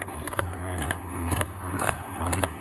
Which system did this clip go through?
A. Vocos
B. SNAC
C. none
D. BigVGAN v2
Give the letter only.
B